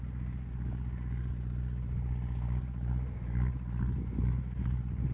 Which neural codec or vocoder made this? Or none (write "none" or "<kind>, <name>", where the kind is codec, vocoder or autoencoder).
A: none